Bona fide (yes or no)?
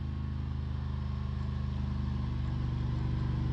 yes